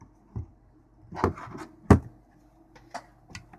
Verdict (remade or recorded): recorded